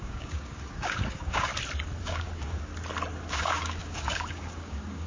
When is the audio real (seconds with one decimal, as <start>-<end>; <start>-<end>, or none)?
1.5-2.0; 2.7-3.3